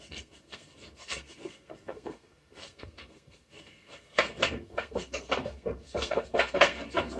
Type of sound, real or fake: fake